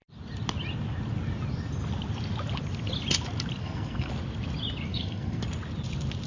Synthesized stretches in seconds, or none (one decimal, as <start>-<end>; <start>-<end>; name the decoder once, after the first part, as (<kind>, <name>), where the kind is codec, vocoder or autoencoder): 3.6-4.1 (codec, SNAC); 4.9-5.4